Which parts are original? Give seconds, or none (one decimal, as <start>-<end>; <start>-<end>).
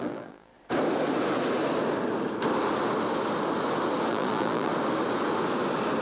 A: 0.5-4.1; 4.7-6.0